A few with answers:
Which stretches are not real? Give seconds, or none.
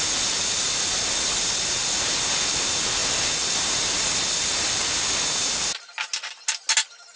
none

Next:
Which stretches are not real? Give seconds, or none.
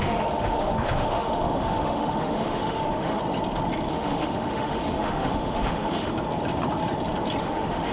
0.0-3.2 (autoencoder, DAC-VAE); 3.9-6.1; 7.4-7.9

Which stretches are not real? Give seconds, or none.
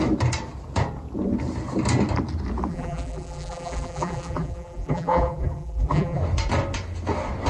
2.7-6.2 (vocoder, BigVGAN v2)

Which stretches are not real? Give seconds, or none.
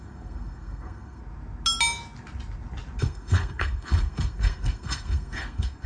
0.0-1.2 (codec, SNAC); 3.0-5.9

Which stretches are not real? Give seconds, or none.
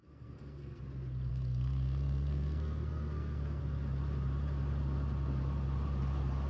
0.0-0.8 (codec, SNAC); 1.3-3.6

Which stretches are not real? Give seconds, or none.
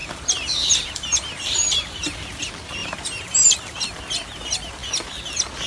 0.0-2.0 (vocoder, BigVGAN v2); 2.8-4.0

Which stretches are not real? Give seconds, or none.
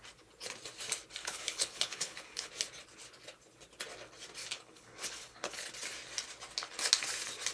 1.2-2.5 (codec, HILCodec); 4.4-5.7